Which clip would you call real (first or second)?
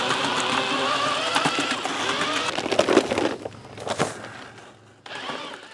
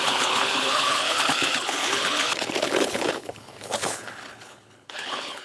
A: first